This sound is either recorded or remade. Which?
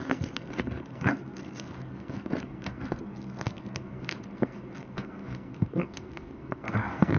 remade